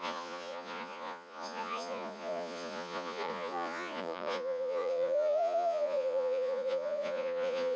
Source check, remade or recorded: remade